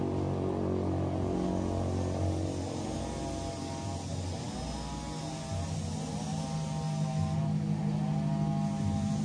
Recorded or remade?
recorded